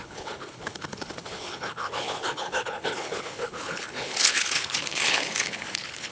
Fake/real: fake